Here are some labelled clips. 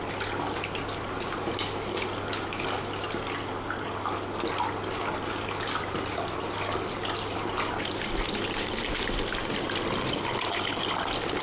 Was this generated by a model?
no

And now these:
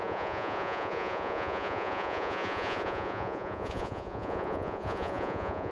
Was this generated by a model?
yes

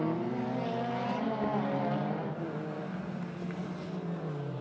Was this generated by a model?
no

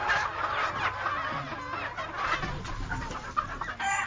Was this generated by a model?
no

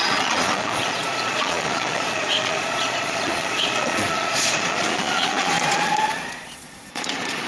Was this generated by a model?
yes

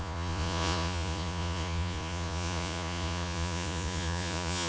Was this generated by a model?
yes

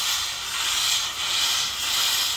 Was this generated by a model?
no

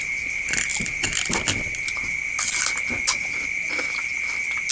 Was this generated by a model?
no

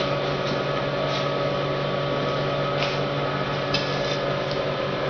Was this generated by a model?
no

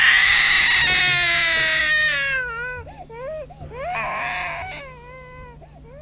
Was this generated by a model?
no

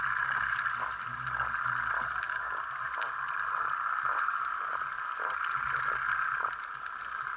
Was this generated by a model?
no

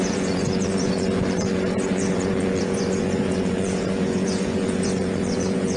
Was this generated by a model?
yes